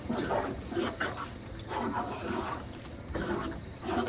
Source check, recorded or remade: recorded